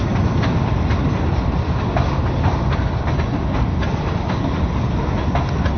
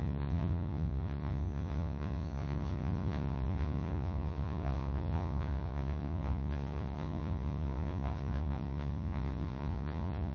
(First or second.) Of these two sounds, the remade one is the second